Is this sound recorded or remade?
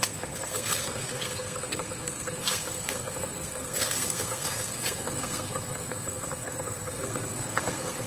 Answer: remade